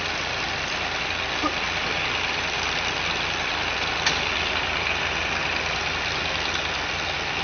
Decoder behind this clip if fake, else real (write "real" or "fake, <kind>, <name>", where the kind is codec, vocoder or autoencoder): real